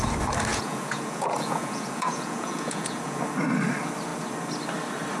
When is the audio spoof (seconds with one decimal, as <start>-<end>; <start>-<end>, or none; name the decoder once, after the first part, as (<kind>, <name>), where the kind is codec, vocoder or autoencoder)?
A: 0.5-3.2 (vocoder, Vocos)